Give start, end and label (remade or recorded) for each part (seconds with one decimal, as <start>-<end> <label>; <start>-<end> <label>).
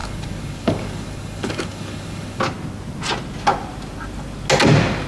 0.0-2.4 remade; 2.4-5.1 recorded